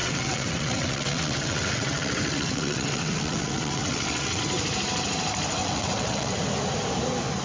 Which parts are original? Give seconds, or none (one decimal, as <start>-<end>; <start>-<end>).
4.4-5.6; 6.4-7.4